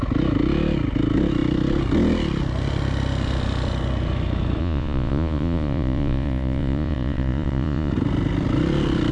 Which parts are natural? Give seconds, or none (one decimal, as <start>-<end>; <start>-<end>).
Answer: 0.0-4.6; 7.9-9.1